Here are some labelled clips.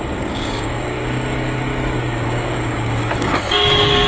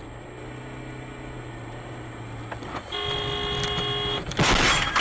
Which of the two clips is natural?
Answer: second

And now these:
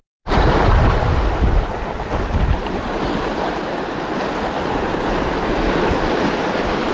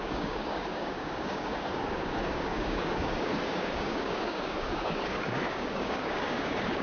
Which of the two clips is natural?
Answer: first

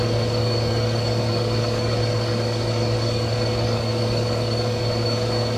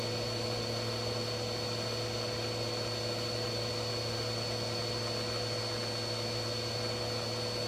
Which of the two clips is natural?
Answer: second